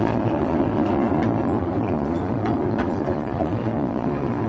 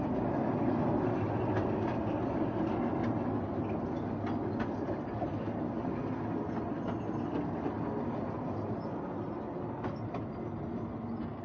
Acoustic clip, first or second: second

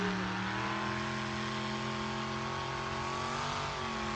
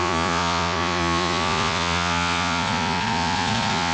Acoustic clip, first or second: first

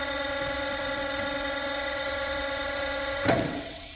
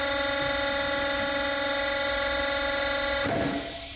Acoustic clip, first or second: second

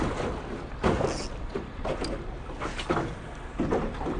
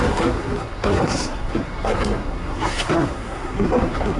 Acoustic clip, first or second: first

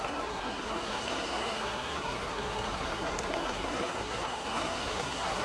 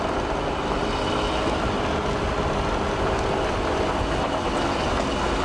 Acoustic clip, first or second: second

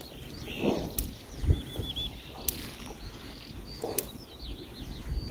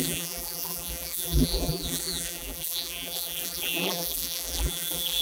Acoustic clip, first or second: first